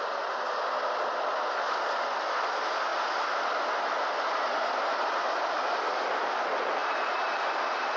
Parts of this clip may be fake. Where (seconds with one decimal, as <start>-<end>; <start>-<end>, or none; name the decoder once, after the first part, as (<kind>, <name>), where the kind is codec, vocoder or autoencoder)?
6.8-7.4 (vocoder, BigVGAN v2)